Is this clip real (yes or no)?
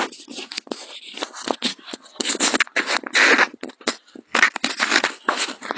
yes